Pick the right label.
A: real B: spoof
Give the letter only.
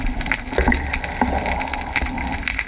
A